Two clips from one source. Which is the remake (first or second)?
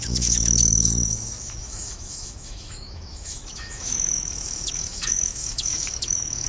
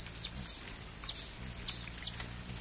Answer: first